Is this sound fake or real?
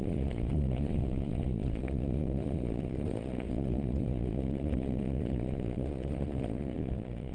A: fake